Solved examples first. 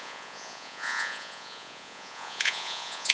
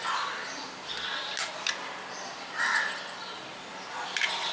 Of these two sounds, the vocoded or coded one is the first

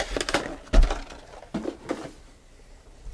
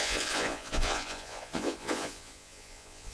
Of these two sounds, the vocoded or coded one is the second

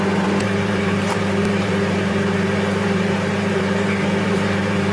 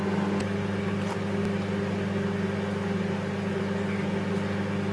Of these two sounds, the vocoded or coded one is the first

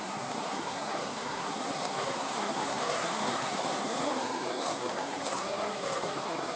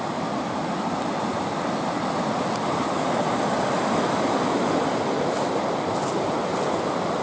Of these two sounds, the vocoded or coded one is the first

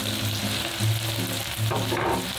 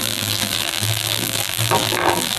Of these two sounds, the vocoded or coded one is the second